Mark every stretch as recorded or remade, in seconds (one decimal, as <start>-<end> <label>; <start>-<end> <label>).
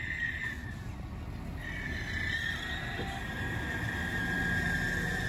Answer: 0.0-5.3 recorded